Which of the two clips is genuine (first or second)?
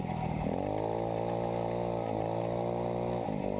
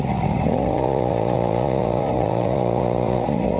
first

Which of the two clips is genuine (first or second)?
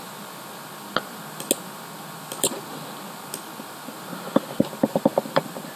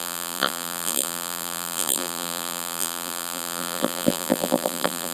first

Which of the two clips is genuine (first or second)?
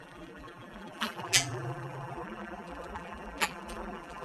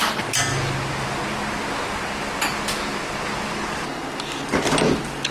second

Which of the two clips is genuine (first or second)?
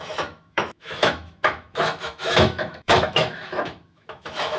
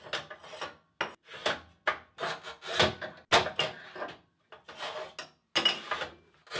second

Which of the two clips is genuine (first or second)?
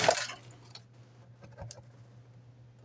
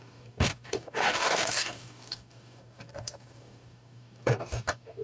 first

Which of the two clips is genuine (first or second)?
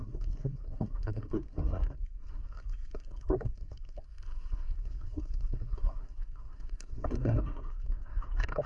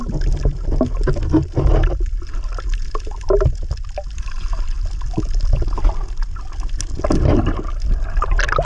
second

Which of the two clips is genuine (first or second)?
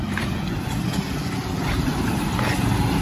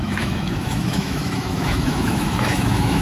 first